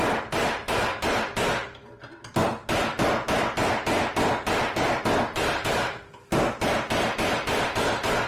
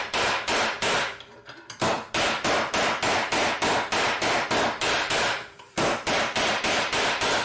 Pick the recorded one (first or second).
first